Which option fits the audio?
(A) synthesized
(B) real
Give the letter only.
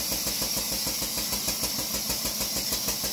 B